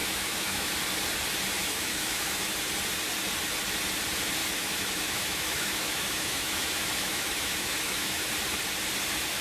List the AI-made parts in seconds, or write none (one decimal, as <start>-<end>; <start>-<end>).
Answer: 0.0-0.7; 1.6-2.5; 4.4-8.3